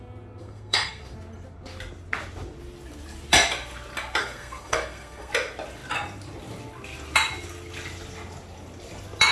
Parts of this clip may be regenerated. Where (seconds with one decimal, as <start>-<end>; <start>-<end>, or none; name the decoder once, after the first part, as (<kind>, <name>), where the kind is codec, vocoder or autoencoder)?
0.4-1.0 (codec, SNAC); 4.2-5.3